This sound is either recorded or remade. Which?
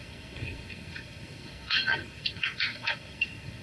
remade